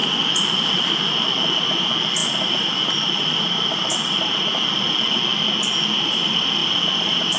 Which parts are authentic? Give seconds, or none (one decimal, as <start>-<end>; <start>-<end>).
0.7-2.2; 4.2-6.6